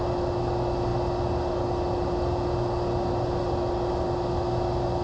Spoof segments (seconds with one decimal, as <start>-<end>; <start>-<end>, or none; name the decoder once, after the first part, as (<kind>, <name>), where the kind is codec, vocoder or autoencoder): none